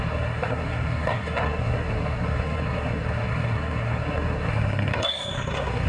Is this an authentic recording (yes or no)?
no